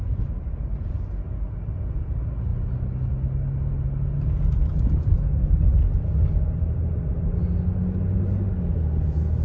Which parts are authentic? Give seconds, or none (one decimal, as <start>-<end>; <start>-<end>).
1.3-9.4